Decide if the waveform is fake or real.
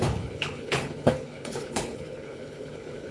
fake